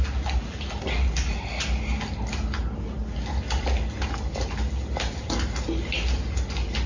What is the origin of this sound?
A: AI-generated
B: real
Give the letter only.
B